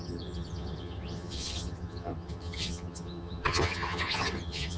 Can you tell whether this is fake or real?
fake